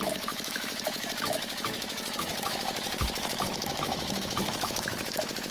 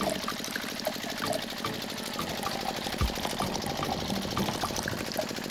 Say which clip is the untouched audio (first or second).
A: second